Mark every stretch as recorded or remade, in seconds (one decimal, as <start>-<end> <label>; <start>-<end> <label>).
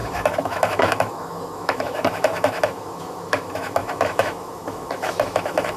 0.0-5.8 remade